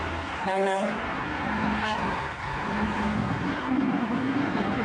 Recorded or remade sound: remade